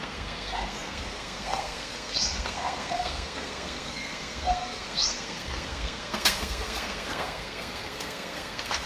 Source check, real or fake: fake